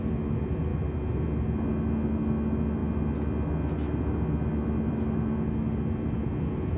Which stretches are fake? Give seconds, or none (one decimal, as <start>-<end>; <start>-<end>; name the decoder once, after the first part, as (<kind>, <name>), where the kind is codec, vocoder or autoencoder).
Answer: none